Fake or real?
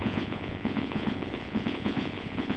fake